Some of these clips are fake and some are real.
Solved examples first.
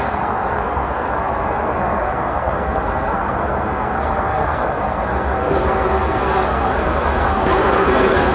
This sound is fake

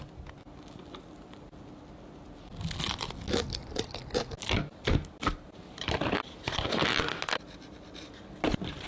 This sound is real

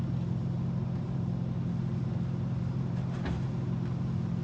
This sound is real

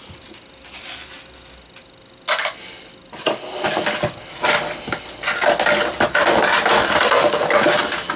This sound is real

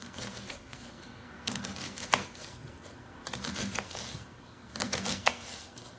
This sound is fake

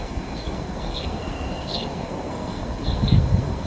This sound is fake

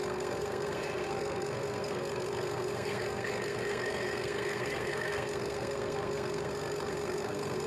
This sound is fake